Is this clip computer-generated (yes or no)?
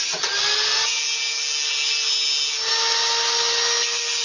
no